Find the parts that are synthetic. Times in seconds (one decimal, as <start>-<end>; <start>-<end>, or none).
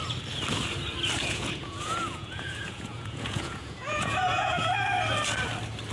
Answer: 1.2-4.7